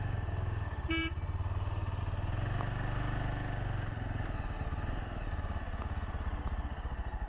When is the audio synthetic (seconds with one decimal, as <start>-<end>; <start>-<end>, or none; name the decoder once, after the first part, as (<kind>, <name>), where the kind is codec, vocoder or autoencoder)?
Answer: none